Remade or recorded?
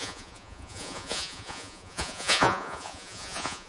remade